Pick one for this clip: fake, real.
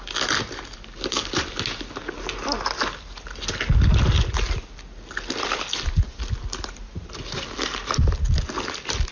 real